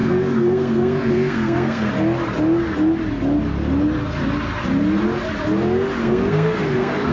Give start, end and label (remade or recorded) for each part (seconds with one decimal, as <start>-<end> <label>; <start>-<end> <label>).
0.0-1.9 remade; 1.9-6.0 recorded; 6.0-7.1 remade

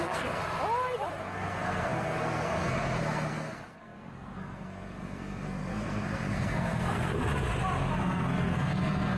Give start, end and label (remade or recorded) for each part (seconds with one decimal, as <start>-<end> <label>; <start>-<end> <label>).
0.0-0.4 remade; 0.4-1.2 recorded; 1.2-7.2 remade; 7.2-8.0 recorded; 8.0-9.2 remade

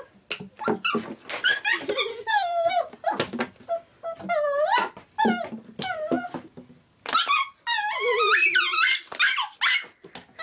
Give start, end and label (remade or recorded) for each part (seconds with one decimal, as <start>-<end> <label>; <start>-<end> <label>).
0.0-2.1 recorded; 2.1-2.7 remade; 2.7-10.4 recorded

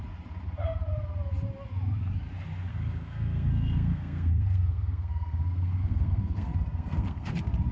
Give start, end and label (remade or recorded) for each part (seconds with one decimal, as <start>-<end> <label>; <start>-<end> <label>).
0.0-2.7 recorded; 2.7-7.3 remade; 7.3-7.7 recorded